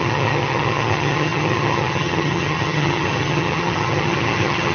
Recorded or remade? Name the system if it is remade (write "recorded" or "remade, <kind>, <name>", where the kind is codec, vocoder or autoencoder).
remade, vocoder, HiFi-GAN